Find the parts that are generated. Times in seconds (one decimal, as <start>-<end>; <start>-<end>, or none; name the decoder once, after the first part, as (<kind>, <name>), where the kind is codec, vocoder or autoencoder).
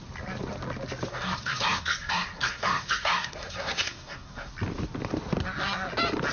1.1-4.5 (codec, SNAC)